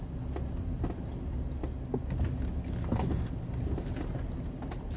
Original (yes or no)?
yes